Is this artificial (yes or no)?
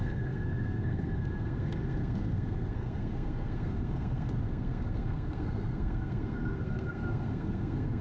yes